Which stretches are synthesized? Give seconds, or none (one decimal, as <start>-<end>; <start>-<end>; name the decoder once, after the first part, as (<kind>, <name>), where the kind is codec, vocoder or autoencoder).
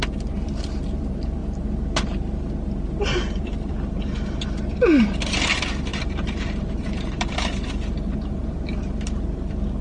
5.9-7.3 (vocoder, BigVGAN v2)